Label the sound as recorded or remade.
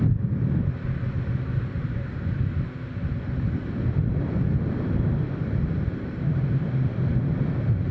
recorded